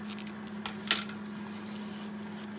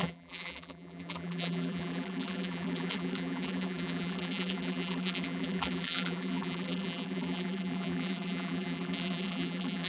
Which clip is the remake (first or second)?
second